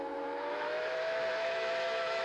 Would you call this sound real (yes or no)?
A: no